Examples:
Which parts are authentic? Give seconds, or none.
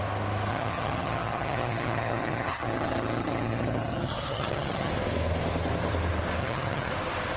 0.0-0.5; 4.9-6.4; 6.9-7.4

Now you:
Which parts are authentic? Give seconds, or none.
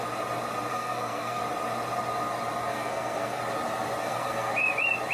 0.0-0.7; 1.4-2.7; 3.4-4.0; 4.5-5.1